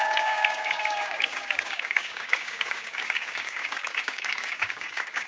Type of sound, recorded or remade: remade